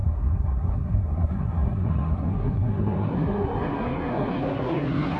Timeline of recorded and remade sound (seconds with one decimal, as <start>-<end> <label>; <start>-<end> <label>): 0.0-5.2 remade